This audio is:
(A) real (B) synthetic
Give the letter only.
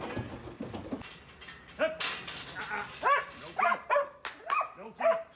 A